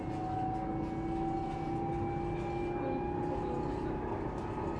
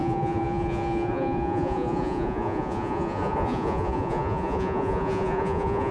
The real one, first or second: first